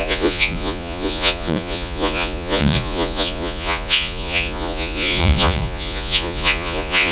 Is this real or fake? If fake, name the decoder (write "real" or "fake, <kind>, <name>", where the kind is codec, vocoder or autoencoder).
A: fake, vocoder, Vocos